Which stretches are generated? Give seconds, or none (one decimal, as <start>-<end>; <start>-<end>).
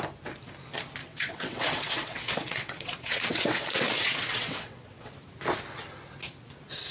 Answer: 1.0-5.1